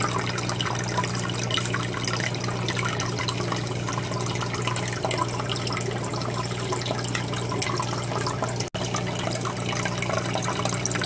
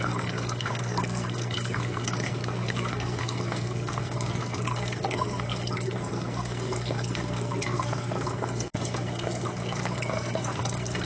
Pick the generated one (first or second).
second